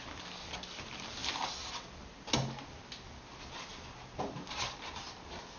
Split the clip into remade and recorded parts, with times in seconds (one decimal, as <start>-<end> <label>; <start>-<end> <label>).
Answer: 0.0-5.6 recorded